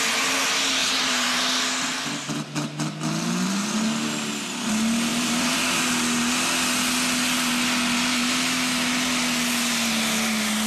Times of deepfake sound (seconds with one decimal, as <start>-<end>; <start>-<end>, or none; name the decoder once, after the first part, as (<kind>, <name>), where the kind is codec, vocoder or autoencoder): 0.8-1.4 (vocoder, BigVGAN v2); 5.1-5.8